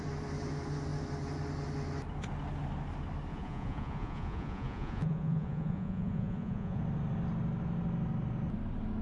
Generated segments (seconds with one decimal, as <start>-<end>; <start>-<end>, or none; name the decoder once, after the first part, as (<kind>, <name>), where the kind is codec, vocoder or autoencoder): 3.3-6.8 (vocoder, Vocos)